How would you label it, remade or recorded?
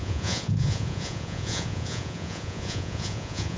remade